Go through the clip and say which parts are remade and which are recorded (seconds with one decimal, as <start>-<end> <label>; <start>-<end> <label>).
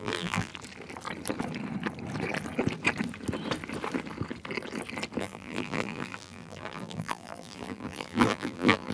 0.0-0.5 remade; 0.5-5.2 recorded; 5.2-8.9 remade